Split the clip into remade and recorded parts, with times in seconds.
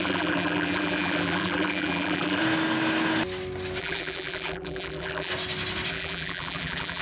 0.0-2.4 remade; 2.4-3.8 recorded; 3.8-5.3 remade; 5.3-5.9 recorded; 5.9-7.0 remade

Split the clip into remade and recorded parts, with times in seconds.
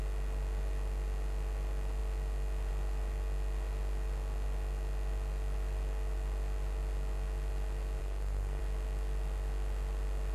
0.0-8.0 recorded; 8.0-8.6 remade; 8.6-10.3 recorded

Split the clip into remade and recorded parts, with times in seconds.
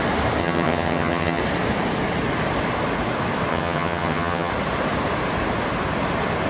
0.0-0.4 recorded; 0.4-1.4 remade; 1.4-3.5 recorded; 3.5-4.5 remade; 4.5-6.5 recorded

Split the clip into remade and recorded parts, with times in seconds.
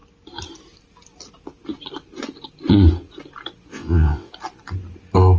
0.0-3.7 recorded; 3.7-4.3 remade; 4.3-5.4 recorded